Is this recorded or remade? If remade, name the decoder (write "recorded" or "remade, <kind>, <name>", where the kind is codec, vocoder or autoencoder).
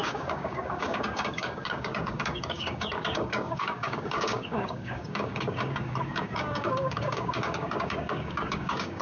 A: remade, codec, DAC